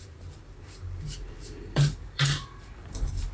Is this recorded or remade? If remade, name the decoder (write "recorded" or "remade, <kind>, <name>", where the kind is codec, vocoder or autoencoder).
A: remade, vocoder, BigVGAN v2